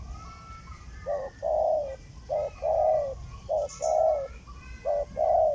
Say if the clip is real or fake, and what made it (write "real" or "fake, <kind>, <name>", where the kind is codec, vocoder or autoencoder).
real